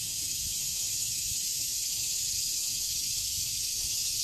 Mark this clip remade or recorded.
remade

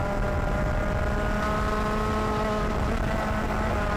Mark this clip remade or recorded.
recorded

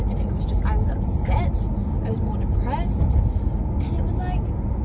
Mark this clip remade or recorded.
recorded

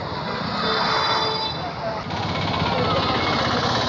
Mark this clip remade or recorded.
recorded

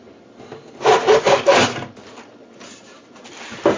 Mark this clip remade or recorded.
recorded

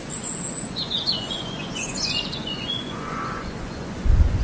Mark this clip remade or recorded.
remade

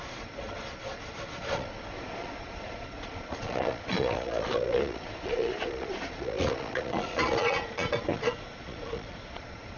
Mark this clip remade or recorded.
remade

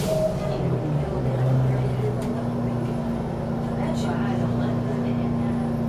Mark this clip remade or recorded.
recorded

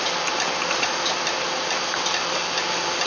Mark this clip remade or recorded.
recorded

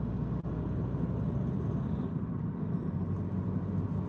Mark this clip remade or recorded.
recorded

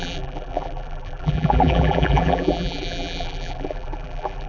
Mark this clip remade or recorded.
remade